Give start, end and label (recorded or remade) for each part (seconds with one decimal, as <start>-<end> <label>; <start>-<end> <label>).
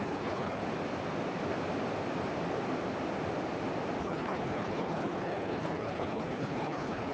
0.0-0.6 remade; 0.6-4.0 recorded; 4.0-7.1 remade